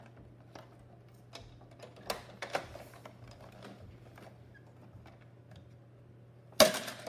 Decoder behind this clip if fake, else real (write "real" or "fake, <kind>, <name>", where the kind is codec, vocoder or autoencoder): real